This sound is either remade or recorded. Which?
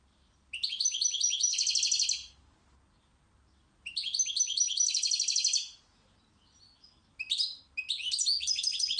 recorded